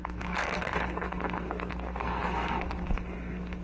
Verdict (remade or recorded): remade